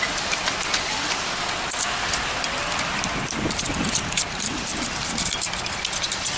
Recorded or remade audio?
recorded